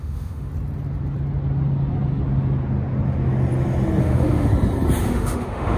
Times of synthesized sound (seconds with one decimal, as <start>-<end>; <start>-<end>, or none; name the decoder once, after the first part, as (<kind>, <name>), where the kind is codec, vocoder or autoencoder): 0.0-0.5 (autoencoder, DAC-VAE); 4.0-4.5; 5.0-5.8

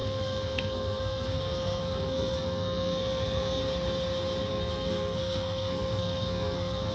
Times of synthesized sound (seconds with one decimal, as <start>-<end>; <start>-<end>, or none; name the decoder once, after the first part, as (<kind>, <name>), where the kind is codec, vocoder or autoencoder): 0.0-3.6 (codec, SNAC); 4.5-6.9